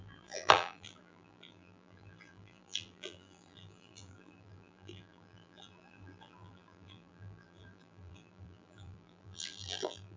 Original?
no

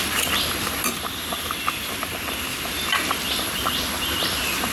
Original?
no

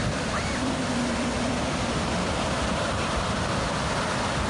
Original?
no